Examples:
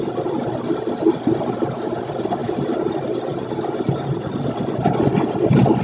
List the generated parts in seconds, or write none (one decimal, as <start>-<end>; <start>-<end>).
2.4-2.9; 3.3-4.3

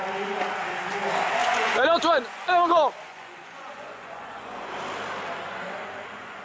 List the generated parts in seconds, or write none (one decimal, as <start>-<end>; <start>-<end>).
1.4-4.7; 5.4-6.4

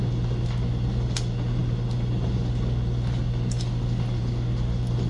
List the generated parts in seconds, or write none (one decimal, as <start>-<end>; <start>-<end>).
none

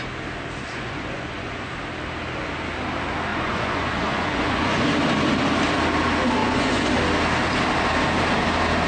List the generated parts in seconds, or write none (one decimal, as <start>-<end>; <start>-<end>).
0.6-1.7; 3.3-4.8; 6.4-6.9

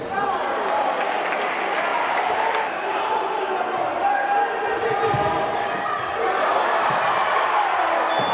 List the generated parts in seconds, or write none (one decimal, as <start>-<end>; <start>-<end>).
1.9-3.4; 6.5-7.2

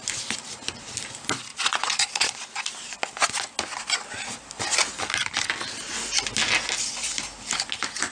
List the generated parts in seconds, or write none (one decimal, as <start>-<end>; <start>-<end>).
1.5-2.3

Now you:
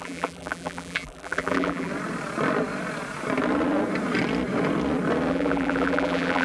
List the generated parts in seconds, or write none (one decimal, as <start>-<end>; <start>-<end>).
0.0-1.9; 5.3-6.4

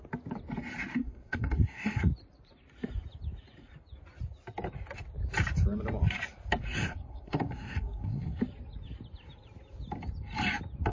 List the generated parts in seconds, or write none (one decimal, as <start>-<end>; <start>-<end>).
1.0-2.1; 6.8-8.4